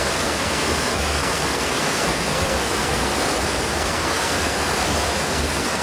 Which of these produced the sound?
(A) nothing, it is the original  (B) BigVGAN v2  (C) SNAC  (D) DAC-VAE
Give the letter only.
C